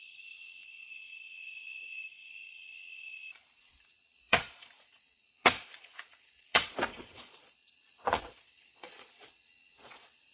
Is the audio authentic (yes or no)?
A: no